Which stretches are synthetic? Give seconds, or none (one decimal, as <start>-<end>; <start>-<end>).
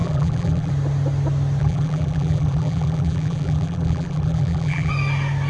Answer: 0.0-0.7; 1.6-4.9